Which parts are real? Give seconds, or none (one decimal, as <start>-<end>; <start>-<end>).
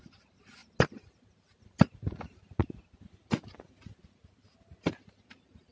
0.0-5.7